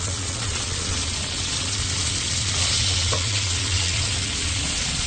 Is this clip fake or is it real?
fake